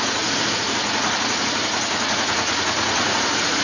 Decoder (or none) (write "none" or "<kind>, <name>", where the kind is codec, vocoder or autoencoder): vocoder, Vocos